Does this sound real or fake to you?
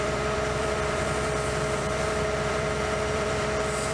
fake